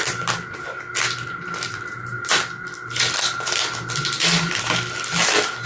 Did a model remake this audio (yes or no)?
no